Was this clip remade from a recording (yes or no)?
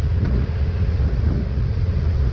yes